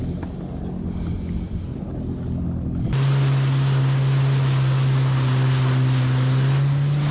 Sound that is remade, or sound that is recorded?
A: recorded